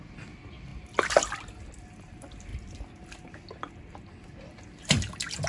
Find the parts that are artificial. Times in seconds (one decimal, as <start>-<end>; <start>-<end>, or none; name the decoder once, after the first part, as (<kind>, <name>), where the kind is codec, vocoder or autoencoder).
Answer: none